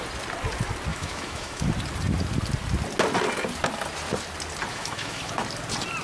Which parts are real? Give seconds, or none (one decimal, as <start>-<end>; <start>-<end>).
0.0-0.9; 1.6-4.7; 5.3-6.0